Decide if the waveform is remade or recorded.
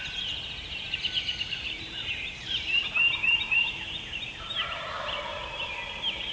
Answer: remade